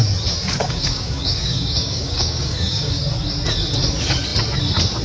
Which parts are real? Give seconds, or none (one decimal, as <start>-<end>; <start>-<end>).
0.0-0.6; 3.0-5.0